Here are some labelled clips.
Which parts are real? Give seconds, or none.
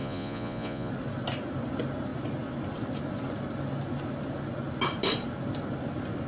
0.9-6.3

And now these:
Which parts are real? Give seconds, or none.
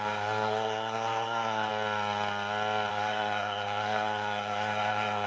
1.7-2.9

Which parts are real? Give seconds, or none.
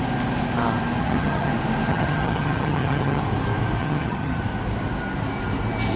0.0-1.0; 1.5-1.9; 3.2-3.8; 4.4-6.0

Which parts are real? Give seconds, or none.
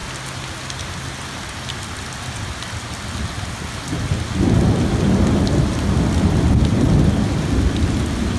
0.0-8.4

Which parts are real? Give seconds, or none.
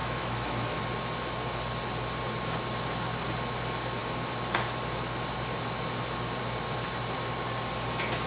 0.8-8.3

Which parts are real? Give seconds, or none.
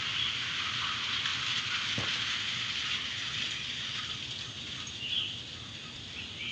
0.0-6.5